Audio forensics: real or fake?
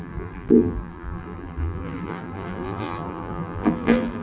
fake